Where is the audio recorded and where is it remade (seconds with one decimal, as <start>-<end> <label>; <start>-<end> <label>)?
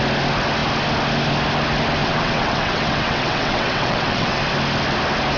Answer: 0.0-2.0 recorded; 2.0-4.4 remade; 4.4-5.4 recorded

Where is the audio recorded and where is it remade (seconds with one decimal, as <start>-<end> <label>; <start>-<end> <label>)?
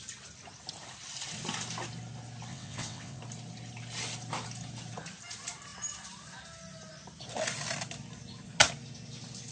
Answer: 0.0-2.5 recorded; 2.5-3.2 remade; 3.2-9.5 recorded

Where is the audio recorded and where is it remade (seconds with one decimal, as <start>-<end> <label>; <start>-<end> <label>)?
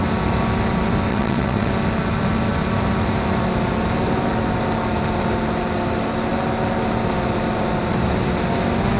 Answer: 0.0-1.1 recorded; 1.1-1.7 remade; 1.7-9.0 recorded